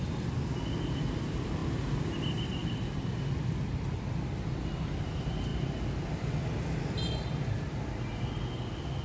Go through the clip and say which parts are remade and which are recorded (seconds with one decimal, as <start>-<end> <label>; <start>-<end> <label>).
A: 0.0-9.0 recorded